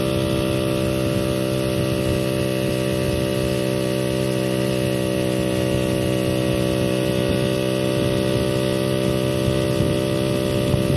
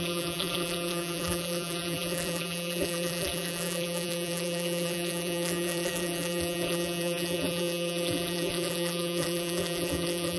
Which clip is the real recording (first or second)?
first